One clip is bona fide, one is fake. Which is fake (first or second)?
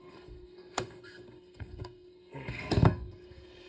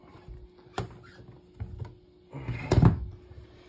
first